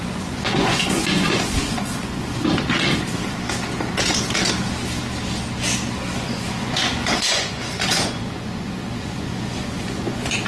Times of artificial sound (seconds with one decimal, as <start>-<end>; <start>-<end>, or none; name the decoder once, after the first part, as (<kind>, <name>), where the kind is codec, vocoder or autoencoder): 0.0-2.4 (vocoder, Vocos); 6.1-10.5

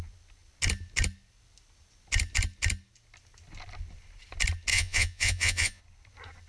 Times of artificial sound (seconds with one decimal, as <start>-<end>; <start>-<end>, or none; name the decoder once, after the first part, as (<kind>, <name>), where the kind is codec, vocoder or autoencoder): 4.7-5.8 (vocoder, Vocos)

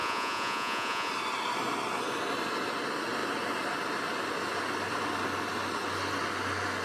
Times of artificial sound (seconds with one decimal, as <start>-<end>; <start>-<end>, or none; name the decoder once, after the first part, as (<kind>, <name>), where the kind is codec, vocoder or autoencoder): 0.0-1.1 (vocoder, Vocos)

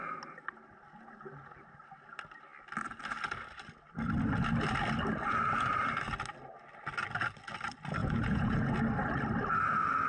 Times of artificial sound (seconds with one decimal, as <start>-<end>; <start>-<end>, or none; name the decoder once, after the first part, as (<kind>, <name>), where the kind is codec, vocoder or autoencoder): 8.0-8.7 (vocoder, Vocos)